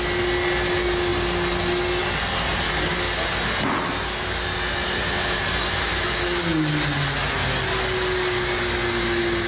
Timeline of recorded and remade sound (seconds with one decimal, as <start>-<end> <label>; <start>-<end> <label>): 0.0-9.5 recorded